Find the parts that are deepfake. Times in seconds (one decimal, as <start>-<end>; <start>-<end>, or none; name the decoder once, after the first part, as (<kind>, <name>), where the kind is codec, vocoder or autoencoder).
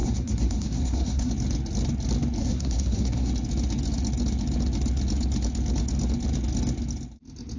0.0-1.3 (codec, SNAC); 2.4-3.3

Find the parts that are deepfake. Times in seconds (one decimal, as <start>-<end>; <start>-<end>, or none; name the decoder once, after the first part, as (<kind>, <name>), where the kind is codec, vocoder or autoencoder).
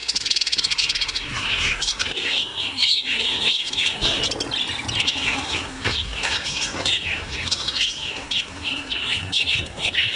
0.0-4.2 (codec, SNAC); 5.0-10.2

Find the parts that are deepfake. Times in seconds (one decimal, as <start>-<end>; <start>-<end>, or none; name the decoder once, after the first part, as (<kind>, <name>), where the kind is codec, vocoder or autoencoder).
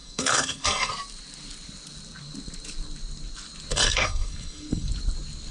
0.0-0.9 (codec, SNAC); 3.7-4.9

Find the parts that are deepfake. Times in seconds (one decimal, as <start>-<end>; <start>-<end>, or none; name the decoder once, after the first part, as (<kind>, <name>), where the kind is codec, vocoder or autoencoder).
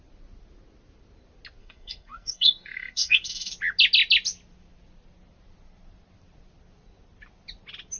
1.6-3.5 (codec, SNAC)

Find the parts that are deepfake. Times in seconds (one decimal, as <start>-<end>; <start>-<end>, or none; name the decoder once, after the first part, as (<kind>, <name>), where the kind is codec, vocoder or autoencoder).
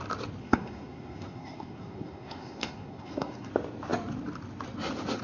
0.4-3.5 (codec, SNAC)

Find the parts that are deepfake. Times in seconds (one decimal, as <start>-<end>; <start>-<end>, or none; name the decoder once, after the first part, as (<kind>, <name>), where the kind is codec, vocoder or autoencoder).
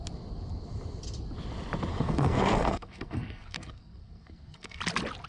1.9-4.8 (codec, SNAC)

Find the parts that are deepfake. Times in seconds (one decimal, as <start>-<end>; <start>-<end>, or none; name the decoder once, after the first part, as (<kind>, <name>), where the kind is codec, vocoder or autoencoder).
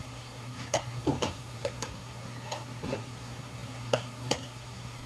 0.0-5.1 (codec, SNAC)